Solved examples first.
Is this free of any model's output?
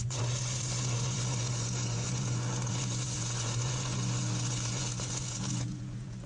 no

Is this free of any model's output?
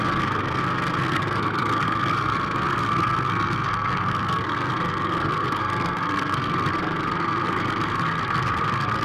no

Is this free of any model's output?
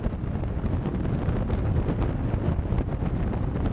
yes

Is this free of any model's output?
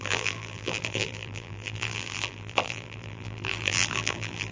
no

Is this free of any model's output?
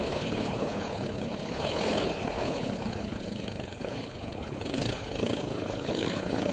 no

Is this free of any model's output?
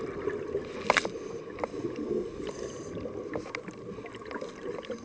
yes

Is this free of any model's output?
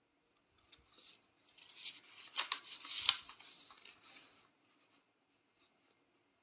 yes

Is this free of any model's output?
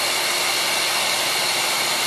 yes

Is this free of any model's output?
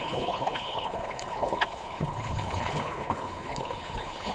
no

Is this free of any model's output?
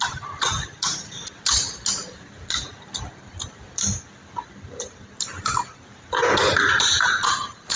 yes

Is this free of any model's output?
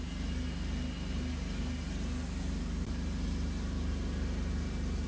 yes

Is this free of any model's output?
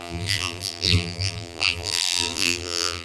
no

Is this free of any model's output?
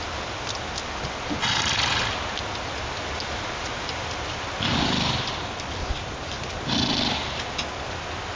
yes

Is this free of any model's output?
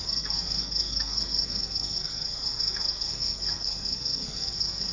no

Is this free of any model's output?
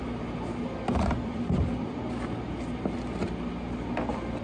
yes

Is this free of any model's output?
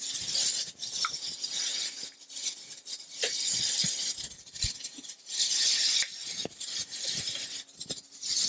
yes